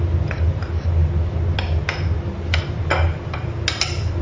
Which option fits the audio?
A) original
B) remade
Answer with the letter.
A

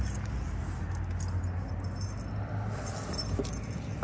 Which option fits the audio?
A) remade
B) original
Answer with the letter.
B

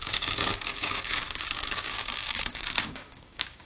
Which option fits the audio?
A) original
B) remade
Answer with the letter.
B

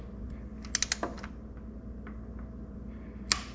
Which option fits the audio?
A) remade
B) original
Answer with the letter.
B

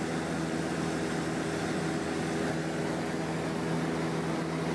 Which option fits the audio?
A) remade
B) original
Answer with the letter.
B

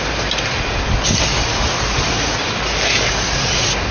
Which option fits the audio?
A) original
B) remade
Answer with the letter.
A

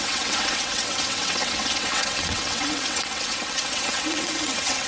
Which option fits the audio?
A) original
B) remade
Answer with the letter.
B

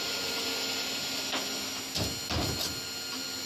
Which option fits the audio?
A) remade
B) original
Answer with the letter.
B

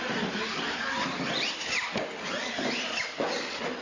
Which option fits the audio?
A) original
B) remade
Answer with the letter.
A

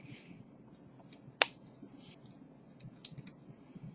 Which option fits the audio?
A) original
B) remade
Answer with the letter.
A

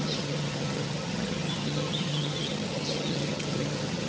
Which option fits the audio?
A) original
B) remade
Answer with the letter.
B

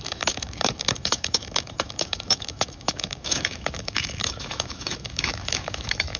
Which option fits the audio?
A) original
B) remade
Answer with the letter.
B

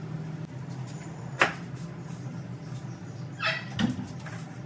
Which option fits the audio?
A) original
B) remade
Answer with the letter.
A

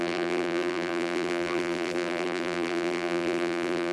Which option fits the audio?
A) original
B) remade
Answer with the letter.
B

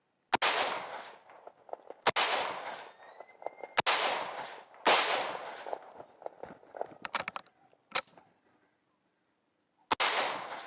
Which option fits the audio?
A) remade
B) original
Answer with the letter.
B